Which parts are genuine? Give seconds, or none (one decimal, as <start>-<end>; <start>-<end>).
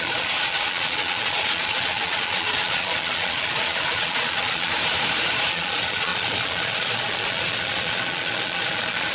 4.7-5.5